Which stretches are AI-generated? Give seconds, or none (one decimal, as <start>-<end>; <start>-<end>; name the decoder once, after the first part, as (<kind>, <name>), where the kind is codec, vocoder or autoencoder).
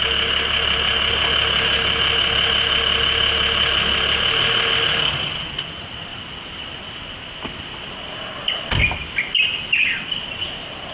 6.1-7.0 (vocoder, BigVGAN v2)